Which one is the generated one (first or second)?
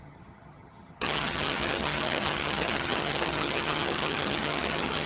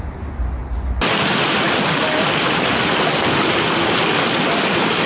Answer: first